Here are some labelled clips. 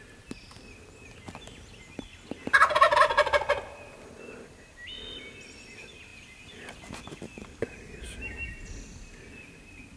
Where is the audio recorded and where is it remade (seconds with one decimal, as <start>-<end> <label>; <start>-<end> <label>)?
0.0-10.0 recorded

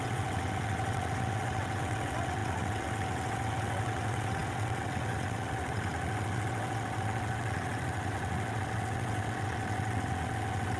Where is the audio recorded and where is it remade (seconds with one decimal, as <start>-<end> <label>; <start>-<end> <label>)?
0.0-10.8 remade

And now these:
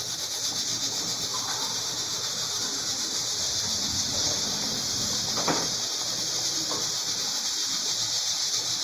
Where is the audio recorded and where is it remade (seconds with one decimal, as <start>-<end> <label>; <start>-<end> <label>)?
0.0-2.3 recorded; 2.3-7.5 remade; 7.5-8.8 recorded

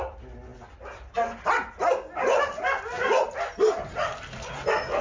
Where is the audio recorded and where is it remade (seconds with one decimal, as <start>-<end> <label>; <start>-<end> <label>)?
0.0-5.0 recorded